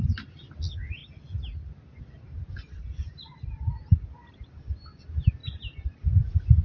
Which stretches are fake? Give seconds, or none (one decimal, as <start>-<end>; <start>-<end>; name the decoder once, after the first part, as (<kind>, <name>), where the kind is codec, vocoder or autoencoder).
0.0-1.0 (vocoder, BigVGAN v2); 5.0-5.4